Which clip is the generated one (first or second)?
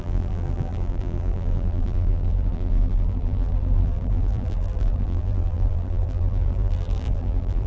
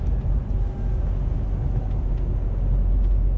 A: first